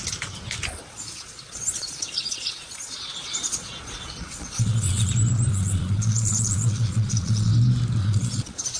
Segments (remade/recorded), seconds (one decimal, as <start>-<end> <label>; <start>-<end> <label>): 0.0-0.8 recorded; 0.8-5.1 remade; 5.1-5.5 recorded; 5.5-7.5 remade; 7.5-8.0 recorded; 8.0-8.8 remade